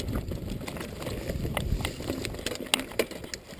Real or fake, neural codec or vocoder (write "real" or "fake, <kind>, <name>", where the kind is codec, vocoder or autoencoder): real